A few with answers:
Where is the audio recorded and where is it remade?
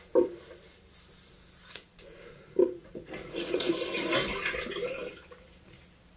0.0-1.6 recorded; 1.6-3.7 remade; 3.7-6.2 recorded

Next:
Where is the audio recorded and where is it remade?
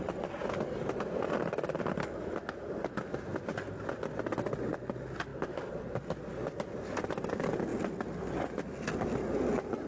0.0-9.9 recorded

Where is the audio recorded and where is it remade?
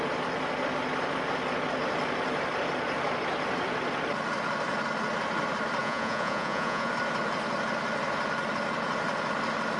0.0-5.8 recorded; 5.8-6.9 remade; 6.9-9.8 recorded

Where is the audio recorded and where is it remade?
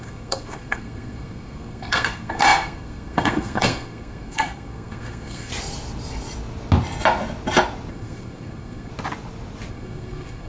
0.0-5.5 remade; 5.5-7.9 recorded; 7.9-8.9 remade; 8.9-9.7 recorded; 9.7-10.5 remade